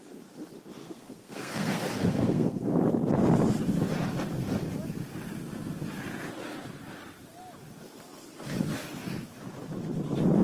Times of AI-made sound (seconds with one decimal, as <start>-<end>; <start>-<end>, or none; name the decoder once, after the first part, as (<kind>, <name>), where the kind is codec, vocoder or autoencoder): 0.8-2.8 (codec, SNAC)

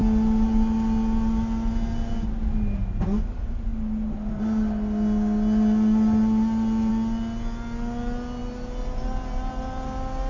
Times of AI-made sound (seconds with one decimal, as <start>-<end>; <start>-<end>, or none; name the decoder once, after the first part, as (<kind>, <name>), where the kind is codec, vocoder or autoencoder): none

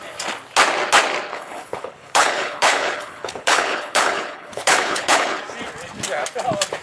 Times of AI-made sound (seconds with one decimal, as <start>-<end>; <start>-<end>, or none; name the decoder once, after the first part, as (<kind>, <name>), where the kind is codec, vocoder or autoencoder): 1.3-5.4 (codec, HILCodec)